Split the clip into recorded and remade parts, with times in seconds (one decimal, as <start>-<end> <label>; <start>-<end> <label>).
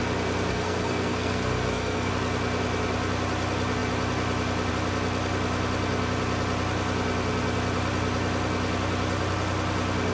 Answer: 0.0-0.5 recorded; 0.5-2.1 remade; 2.1-10.1 recorded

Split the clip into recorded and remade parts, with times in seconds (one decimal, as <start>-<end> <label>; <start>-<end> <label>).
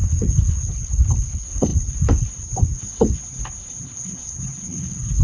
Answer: 0.0-5.2 remade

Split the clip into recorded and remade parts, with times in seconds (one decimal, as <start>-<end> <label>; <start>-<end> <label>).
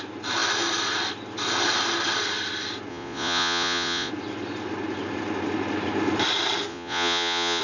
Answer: 0.0-2.9 recorded; 2.9-4.1 remade; 4.1-6.7 recorded; 6.7-7.6 remade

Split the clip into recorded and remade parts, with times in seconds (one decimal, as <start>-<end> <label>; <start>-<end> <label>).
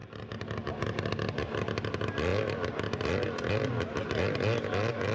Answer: 0.0-5.1 recorded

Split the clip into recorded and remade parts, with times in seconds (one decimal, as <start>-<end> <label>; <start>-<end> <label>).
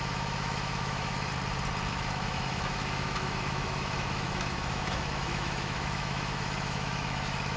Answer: 0.0-1.3 remade; 1.3-1.9 recorded; 1.9-7.6 remade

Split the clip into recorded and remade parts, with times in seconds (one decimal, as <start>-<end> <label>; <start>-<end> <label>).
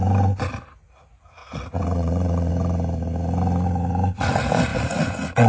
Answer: 0.0-1.4 recorded; 1.4-2.5 remade; 2.5-4.7 recorded; 4.7-5.5 remade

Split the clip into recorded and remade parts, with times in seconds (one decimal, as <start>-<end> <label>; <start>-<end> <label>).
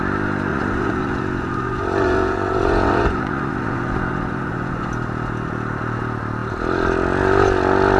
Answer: 0.0-0.5 recorded; 0.5-4.9 remade; 4.9-8.0 recorded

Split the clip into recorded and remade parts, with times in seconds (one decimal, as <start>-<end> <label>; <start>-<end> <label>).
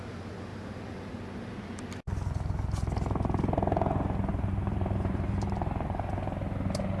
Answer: 0.0-0.5 recorded; 0.5-1.1 remade; 1.1-4.3 recorded; 4.3-6.1 remade; 6.1-7.0 recorded